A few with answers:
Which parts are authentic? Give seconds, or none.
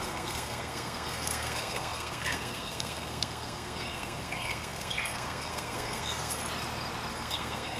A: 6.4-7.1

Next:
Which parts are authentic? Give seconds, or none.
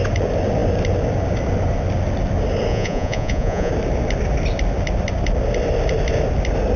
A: 0.0-2.7; 3.7-6.8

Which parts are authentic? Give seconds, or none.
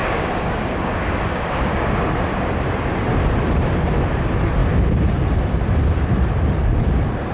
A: 2.0-7.3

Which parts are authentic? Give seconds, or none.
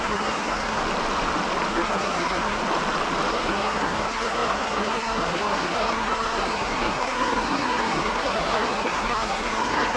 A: 0.8-1.7; 2.6-3.3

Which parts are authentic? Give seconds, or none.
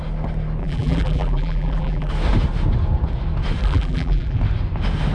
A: 0.0-0.6; 2.1-3.6; 4.4-5.1